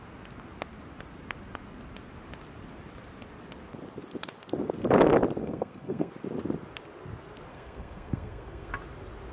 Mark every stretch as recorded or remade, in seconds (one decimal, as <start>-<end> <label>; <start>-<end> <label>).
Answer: 0.0-5.4 recorded; 5.4-6.1 remade; 6.1-7.5 recorded; 7.5-8.7 remade; 8.7-9.3 recorded

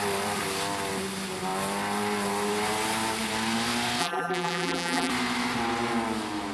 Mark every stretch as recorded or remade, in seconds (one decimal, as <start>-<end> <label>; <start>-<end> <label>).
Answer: 0.0-4.0 recorded; 4.0-5.1 remade; 5.1-6.5 recorded

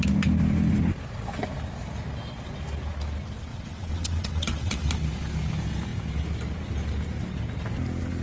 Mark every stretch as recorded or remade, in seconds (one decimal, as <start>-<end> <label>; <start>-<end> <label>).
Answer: 0.0-3.5 recorded; 3.5-4.9 remade; 4.9-8.2 recorded

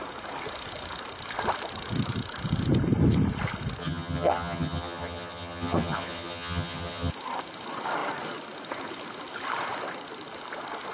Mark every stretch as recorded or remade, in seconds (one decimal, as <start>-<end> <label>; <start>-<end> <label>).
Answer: 0.0-3.8 recorded; 3.8-7.1 remade; 7.1-10.9 recorded